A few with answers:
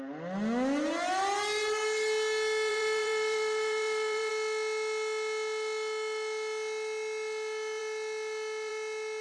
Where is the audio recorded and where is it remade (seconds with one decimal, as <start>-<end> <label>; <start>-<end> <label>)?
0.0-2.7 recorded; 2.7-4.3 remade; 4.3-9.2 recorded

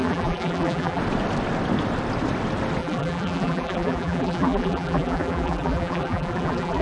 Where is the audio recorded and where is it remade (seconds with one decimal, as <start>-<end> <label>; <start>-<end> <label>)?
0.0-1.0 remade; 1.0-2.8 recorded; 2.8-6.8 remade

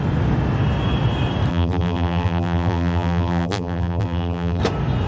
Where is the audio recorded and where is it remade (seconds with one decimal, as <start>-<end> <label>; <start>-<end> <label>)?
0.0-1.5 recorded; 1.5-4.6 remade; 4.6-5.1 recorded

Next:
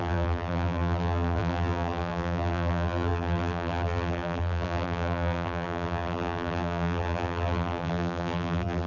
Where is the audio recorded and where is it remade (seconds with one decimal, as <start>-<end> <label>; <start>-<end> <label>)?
0.0-8.9 remade

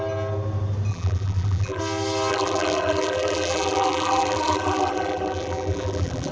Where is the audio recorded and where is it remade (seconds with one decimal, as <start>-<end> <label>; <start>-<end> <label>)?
0.0-0.9 recorded; 0.9-1.8 remade; 1.8-2.3 recorded; 2.3-6.3 remade

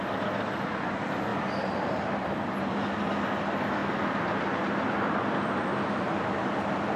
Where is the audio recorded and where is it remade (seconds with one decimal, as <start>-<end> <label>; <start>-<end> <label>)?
0.0-1.3 recorded; 1.3-3.0 remade; 3.0-5.7 recorded; 5.7-6.6 remade; 6.6-7.0 recorded